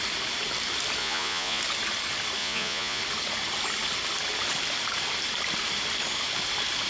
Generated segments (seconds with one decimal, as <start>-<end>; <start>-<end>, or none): 1.0-1.6; 2.4-3.0